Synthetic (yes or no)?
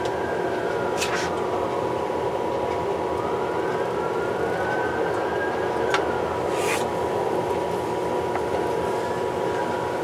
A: no